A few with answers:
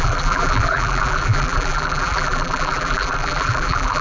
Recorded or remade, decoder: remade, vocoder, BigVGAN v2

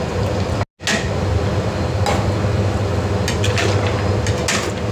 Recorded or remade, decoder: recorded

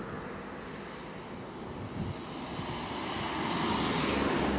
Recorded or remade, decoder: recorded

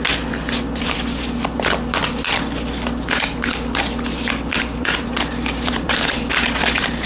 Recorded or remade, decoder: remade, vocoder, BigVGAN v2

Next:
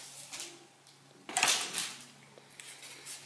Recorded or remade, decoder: recorded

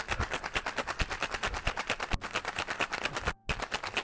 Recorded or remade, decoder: recorded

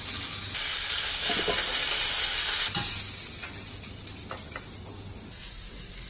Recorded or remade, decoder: recorded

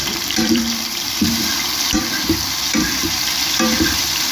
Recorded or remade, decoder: remade, vocoder, BigVGAN v2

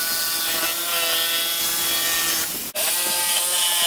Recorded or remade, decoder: recorded